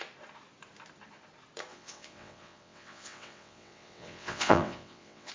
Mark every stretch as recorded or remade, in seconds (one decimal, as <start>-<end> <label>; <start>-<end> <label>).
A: 0.0-1.7 recorded; 1.7-5.3 remade